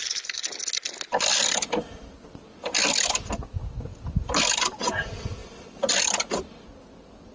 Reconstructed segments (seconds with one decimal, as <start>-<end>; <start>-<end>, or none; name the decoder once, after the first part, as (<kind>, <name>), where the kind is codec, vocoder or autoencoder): none